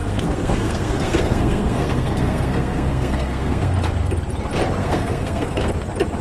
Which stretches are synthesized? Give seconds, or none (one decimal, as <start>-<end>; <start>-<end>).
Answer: 0.0-3.7; 4.8-5.7